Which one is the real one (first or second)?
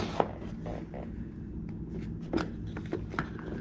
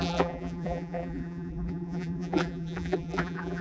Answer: first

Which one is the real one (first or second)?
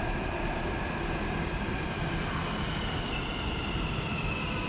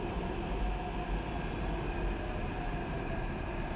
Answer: second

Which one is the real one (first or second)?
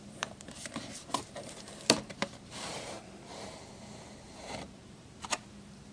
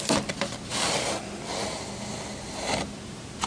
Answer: second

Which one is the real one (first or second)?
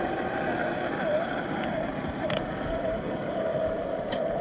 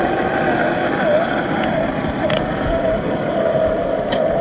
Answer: second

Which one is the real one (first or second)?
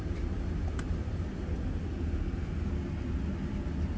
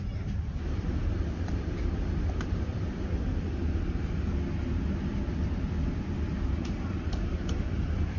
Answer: first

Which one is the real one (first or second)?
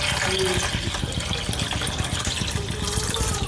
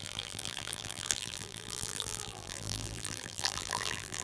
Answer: first